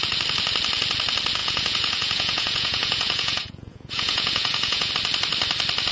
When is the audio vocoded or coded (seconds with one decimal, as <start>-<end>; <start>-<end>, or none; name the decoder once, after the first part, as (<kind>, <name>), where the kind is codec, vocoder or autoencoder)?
1.4-4.9 (vocoder, Vocos)